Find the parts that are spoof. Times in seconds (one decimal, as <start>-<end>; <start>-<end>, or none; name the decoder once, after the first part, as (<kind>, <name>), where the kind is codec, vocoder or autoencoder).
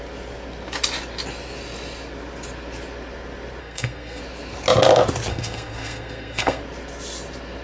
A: 3.6-4.2 (codec, SNAC); 5.3-6.6